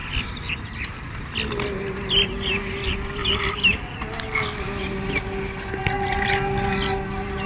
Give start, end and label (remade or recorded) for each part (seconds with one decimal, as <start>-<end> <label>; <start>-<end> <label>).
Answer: 0.0-7.5 recorded